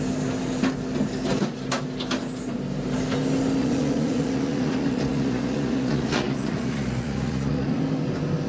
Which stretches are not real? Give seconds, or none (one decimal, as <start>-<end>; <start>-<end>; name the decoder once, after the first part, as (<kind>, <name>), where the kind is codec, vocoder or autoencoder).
3.6-7.8 (vocoder, Vocos)